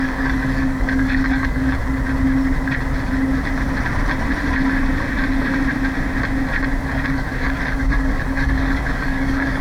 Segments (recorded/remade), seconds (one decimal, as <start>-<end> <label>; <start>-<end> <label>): 0.0-1.8 remade; 1.8-6.9 recorded; 6.9-9.6 remade